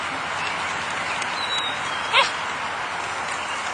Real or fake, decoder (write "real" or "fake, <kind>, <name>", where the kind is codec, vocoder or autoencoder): real